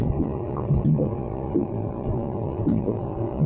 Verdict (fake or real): fake